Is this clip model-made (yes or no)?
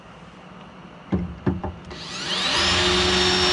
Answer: no